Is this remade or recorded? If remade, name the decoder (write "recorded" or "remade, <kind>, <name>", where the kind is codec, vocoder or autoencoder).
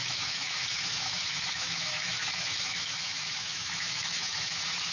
remade, autoencoder, DAC-VAE